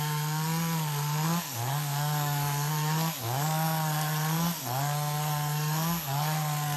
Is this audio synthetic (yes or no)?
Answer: yes